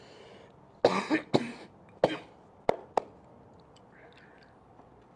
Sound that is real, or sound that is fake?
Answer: real